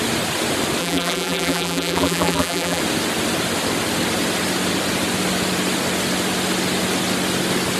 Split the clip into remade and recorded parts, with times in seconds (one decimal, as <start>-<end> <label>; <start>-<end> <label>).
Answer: 0.0-0.8 recorded; 0.8-2.8 remade; 2.8-7.8 recorded